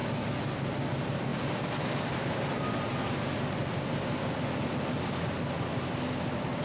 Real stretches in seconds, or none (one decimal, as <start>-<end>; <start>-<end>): 0.0-0.9; 2.9-6.6